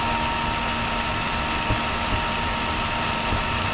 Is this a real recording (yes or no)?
yes